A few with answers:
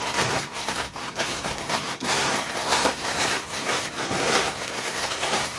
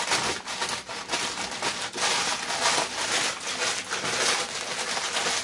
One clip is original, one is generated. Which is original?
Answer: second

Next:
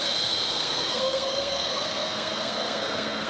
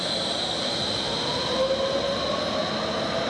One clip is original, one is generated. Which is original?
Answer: second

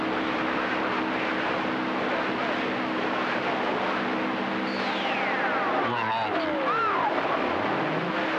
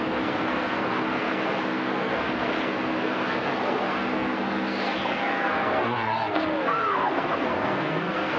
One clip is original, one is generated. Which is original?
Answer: first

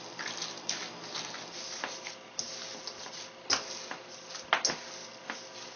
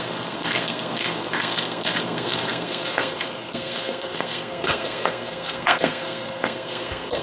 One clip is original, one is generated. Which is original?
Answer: first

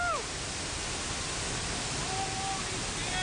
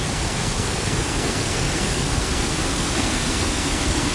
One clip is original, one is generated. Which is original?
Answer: first